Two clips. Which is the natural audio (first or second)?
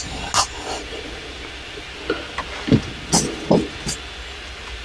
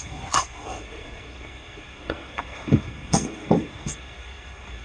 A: first